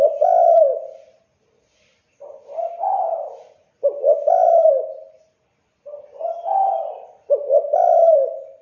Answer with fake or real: real